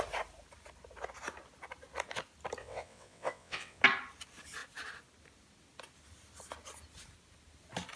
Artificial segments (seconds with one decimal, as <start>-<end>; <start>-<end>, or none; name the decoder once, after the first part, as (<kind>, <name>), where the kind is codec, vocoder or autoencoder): 2.6-3.8 (vocoder, WaveNeXt)